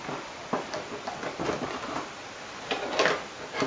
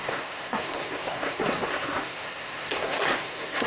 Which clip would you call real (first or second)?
first